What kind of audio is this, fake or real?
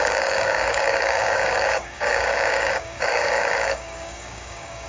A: fake